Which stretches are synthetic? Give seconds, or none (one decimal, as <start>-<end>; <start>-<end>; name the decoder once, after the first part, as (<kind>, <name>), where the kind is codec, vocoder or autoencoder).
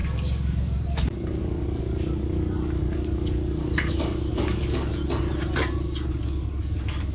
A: 0.0-5.0 (codec, DAC); 6.1-7.1